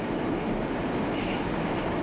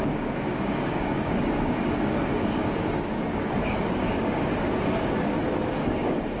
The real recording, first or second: first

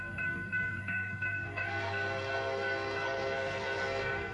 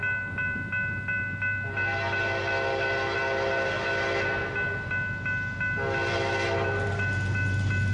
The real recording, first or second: second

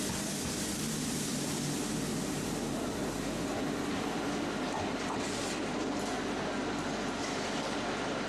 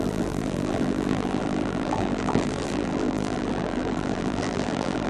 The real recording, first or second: first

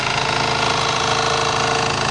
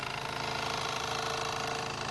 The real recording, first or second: second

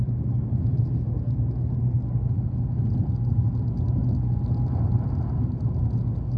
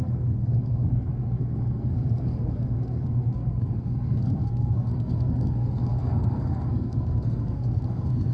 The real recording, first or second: first